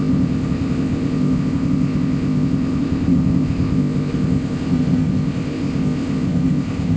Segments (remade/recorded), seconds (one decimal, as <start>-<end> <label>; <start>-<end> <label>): 0.0-7.0 remade